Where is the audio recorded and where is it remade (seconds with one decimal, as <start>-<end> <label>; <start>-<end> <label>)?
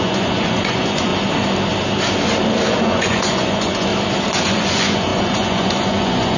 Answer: 0.0-1.1 remade; 1.1-2.7 recorded; 2.7-3.9 remade; 3.9-4.5 recorded; 4.5-6.4 remade